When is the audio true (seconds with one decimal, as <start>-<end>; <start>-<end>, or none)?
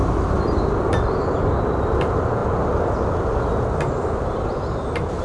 0.0-5.2